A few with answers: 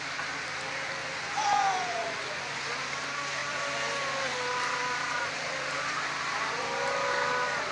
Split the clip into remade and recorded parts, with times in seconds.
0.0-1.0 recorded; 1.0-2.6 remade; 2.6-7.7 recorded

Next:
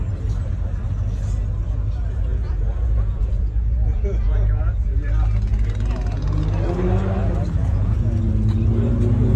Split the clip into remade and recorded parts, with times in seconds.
0.0-2.3 recorded; 2.3-4.6 remade; 4.6-7.6 recorded; 7.6-8.2 remade; 8.2-9.4 recorded

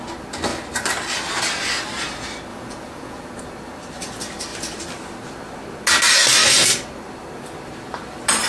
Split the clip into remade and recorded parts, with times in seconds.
0.0-2.5 recorded; 2.5-3.3 remade; 3.3-8.5 recorded

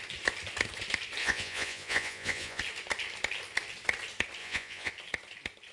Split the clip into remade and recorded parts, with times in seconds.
0.0-1.2 recorded; 1.2-2.6 remade; 2.6-4.4 recorded; 4.4-4.9 remade; 4.9-5.7 recorded

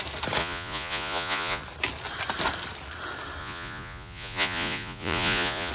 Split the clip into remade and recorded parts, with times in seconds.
0.0-0.4 recorded; 0.4-1.6 remade; 1.6-3.4 recorded; 3.4-5.7 remade